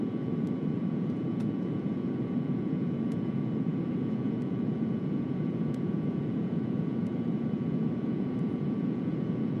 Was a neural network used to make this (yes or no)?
yes